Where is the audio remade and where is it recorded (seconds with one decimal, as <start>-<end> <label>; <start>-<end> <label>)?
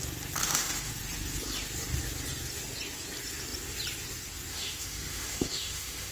0.0-0.4 recorded; 0.4-0.9 remade; 0.9-4.5 recorded; 4.5-6.1 remade